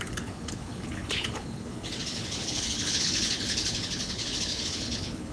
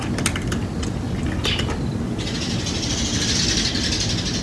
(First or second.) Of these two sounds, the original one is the second